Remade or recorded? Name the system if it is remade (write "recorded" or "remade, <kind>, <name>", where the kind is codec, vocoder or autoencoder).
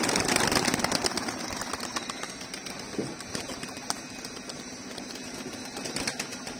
recorded